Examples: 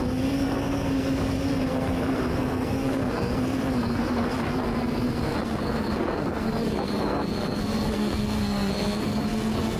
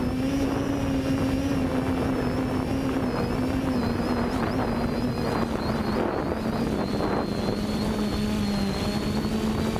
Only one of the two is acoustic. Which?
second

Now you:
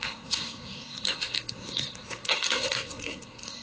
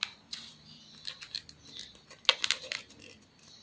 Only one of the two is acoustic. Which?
second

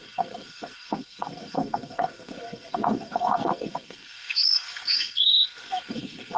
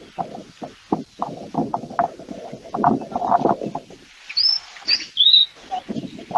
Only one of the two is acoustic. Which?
second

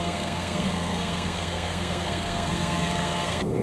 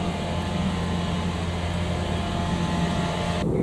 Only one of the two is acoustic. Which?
second